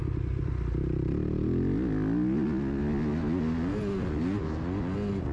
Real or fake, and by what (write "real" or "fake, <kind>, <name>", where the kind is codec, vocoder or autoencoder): real